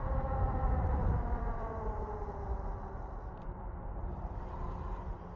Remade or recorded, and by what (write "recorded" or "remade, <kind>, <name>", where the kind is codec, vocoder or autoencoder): remade, vocoder, BigVGAN v2